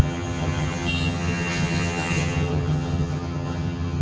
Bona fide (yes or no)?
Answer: no